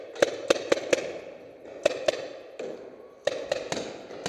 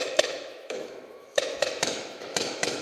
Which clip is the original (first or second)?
first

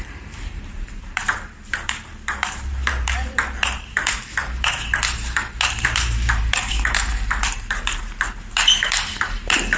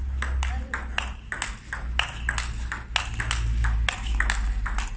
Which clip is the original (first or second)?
second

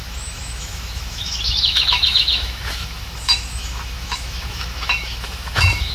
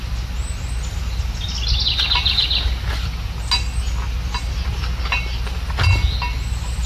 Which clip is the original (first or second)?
second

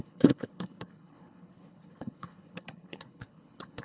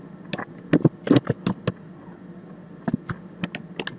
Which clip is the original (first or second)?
second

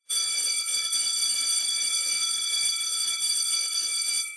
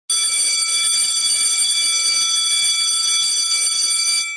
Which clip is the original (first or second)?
second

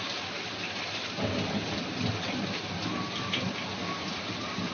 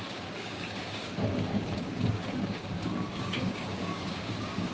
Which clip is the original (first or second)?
first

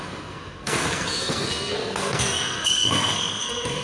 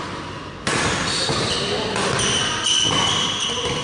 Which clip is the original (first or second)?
second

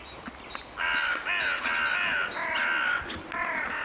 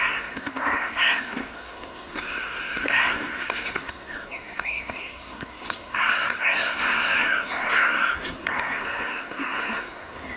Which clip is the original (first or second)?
first